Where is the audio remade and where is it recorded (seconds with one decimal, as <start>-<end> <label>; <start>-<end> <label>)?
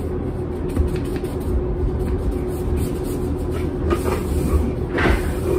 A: 0.0-5.6 recorded